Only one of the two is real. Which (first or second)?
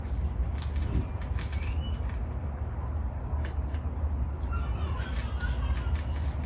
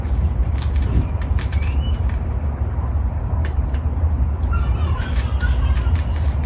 first